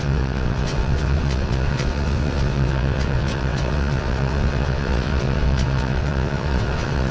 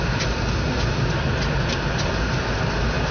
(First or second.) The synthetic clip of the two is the first